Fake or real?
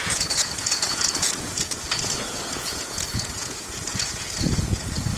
fake